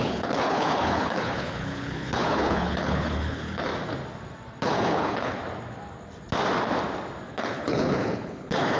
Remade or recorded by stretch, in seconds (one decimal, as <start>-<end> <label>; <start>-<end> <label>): 0.0-3.7 remade; 3.7-4.6 recorded; 4.6-5.4 remade; 5.4-7.3 recorded; 7.3-8.8 remade